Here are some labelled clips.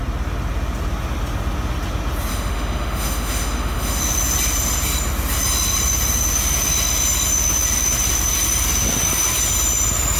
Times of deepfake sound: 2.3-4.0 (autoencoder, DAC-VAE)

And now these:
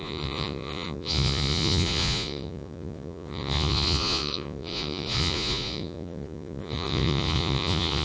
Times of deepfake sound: 0.0-8.0 (vocoder, Vocos)

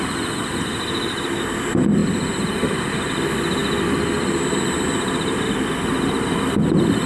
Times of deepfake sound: none